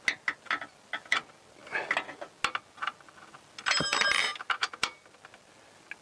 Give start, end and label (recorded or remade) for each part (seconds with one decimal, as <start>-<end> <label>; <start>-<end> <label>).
0.0-6.0 recorded